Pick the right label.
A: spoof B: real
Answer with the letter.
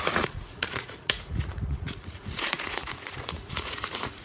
A